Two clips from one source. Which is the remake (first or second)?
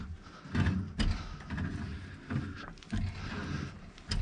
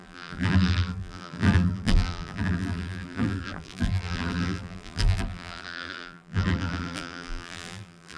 second